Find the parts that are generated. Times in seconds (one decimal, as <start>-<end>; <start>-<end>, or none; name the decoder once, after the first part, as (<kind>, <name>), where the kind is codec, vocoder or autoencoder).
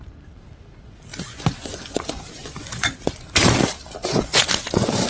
1.3-3.4 (vocoder, Vocos); 4.0-5.1